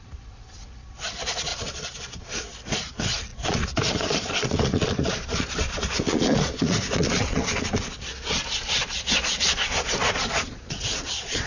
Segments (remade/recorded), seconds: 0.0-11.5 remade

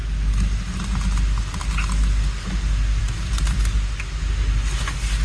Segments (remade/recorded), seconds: 0.0-5.2 recorded